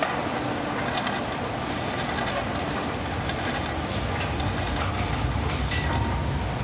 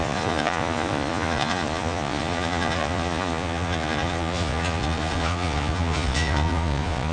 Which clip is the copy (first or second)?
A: second